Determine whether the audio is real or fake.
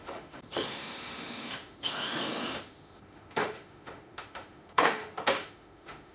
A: fake